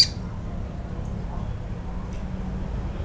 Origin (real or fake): real